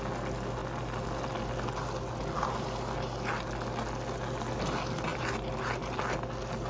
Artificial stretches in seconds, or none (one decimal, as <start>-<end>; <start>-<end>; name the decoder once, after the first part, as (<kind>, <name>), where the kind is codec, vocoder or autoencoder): none